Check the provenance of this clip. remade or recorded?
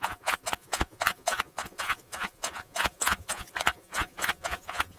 remade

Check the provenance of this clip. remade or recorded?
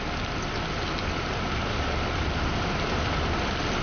recorded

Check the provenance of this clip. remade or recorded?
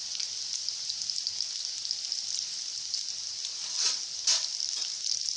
recorded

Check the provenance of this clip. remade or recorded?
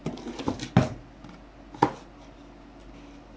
recorded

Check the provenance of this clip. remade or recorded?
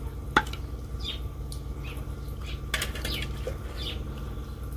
recorded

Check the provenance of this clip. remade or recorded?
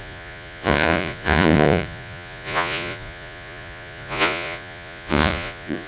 remade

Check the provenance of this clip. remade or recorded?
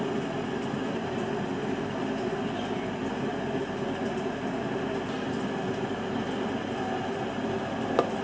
recorded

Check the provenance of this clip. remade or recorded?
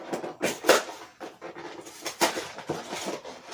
recorded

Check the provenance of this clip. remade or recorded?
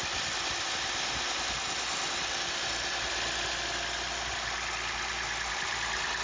recorded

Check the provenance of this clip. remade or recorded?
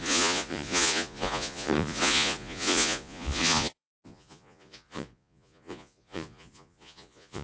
remade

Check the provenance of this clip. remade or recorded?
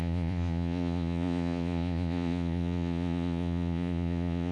remade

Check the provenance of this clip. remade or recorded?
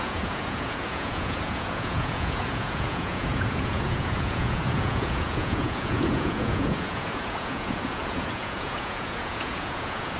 remade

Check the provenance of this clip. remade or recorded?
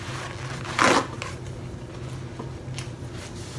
recorded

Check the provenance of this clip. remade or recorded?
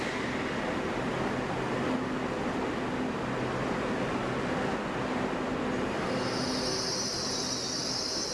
recorded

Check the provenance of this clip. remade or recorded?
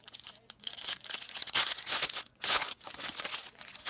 remade